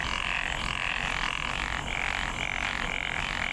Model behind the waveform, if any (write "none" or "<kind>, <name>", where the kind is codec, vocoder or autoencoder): none